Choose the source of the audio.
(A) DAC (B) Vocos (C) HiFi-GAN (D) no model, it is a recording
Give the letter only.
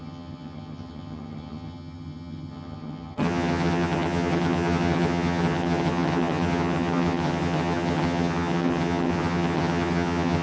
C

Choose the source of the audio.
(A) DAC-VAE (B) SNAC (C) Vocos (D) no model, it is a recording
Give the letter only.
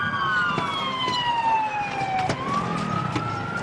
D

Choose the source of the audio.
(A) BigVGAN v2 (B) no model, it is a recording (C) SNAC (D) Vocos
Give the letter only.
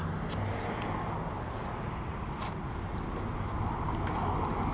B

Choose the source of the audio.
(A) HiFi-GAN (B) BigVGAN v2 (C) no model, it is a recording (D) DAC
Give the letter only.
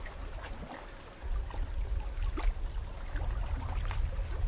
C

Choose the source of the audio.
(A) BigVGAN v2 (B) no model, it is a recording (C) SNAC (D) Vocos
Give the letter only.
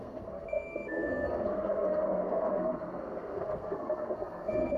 C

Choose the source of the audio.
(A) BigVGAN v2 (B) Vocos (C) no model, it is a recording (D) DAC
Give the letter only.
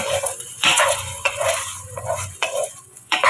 B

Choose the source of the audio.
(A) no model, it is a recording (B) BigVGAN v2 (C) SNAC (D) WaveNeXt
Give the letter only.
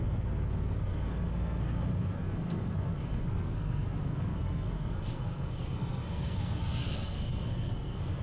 C